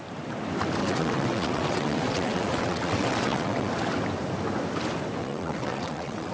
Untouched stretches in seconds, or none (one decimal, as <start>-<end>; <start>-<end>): 0.0-0.8; 3.7-5.2